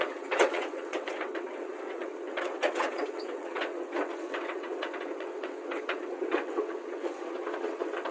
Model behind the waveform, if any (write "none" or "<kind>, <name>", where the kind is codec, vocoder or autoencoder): vocoder, WaveNeXt